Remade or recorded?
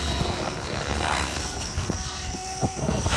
remade